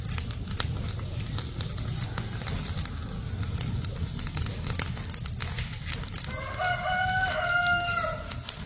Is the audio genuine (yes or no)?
yes